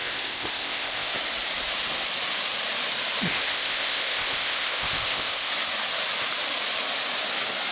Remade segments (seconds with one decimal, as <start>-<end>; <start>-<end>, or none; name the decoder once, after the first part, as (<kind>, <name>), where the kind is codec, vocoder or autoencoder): 0.0-1.1 (codec, ZipCodec); 3.2-5.5